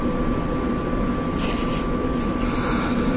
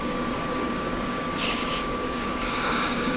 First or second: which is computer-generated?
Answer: second